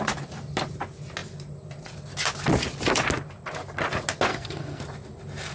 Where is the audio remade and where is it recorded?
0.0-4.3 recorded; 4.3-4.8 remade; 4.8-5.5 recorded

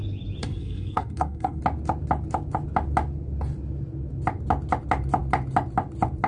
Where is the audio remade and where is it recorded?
0.0-0.4 recorded; 0.4-1.6 remade; 1.6-6.3 recorded

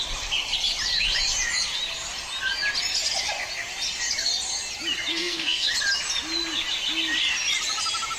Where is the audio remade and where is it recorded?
0.0-5.1 recorded; 5.1-5.7 remade; 5.7-8.2 recorded

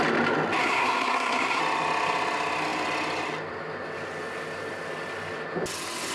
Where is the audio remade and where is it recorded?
0.0-0.6 recorded; 0.6-1.6 remade; 1.6-6.1 recorded

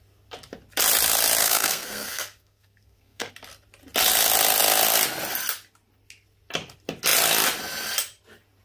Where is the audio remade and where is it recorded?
0.0-1.4 recorded; 1.4-3.3 remade; 3.3-8.6 recorded